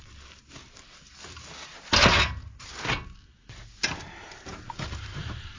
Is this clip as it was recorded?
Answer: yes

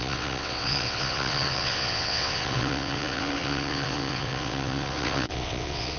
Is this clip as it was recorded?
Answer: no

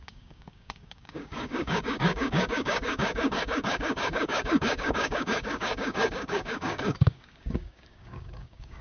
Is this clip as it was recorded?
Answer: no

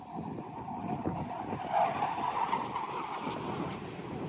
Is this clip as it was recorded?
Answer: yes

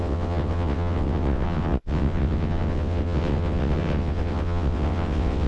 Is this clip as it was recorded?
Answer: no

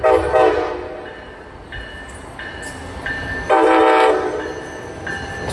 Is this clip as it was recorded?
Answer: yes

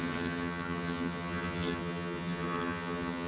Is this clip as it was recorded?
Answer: no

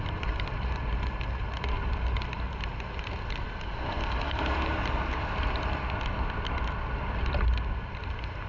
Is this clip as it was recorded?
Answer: yes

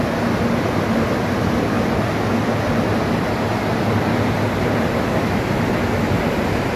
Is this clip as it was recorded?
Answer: yes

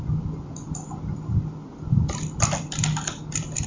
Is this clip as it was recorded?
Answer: yes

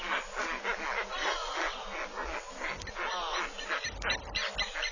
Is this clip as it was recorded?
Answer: yes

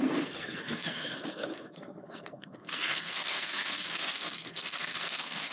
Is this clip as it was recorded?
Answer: no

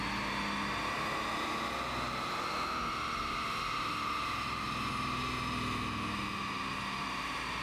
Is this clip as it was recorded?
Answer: yes